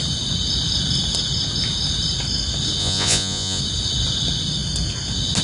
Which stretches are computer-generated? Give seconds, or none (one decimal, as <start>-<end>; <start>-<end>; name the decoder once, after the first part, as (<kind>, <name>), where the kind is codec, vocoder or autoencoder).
2.8-3.6 (vocoder, Vocos)